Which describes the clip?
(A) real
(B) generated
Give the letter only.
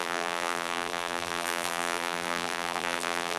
B